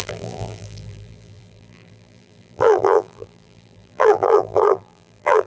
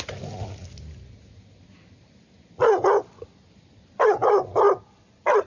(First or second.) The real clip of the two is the second